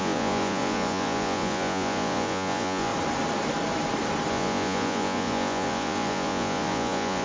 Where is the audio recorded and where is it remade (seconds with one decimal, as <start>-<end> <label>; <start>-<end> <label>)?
0.0-2.9 remade; 2.9-4.3 recorded; 4.3-7.2 remade